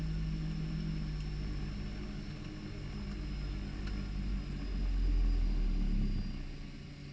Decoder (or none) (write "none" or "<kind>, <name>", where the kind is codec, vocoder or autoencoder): none